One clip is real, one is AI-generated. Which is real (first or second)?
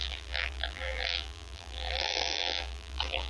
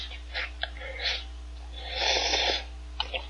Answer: second